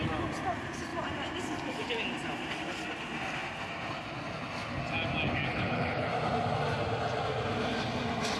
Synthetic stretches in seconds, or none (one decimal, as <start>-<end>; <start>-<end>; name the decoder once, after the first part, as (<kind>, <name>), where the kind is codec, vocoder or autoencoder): 5.5-6.1 (codec, HILCodec)